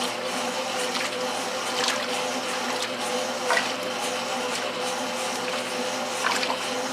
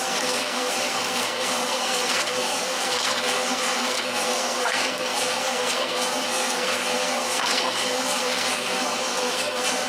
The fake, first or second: second